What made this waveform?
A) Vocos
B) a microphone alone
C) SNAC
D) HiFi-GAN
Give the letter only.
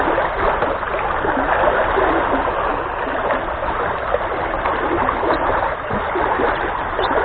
B